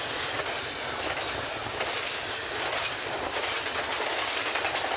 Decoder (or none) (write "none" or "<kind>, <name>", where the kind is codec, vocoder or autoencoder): none